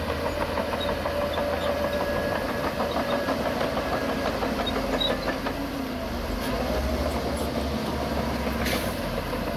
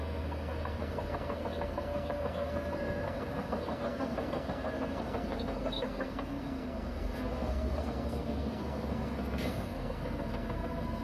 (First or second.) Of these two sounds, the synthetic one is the second